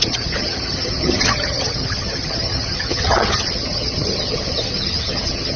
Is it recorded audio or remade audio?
remade